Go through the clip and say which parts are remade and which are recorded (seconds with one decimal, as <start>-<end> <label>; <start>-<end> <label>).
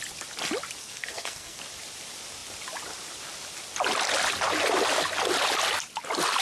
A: 0.0-0.8 recorded; 0.8-1.6 remade; 1.6-6.4 recorded